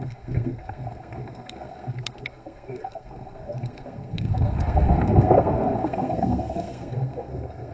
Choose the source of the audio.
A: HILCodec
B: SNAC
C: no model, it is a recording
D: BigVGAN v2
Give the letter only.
B